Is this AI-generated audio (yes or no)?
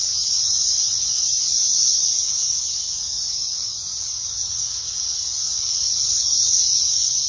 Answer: yes